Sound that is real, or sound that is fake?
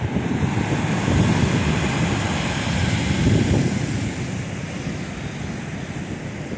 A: real